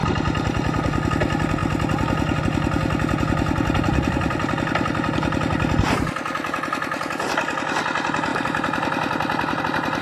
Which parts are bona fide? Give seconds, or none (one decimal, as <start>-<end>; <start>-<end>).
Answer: 1.1-3.9; 5.4-8.3; 9.6-10.0